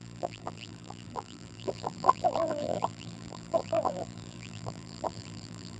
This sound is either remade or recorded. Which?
remade